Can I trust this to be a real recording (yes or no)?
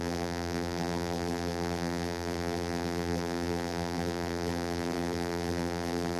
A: no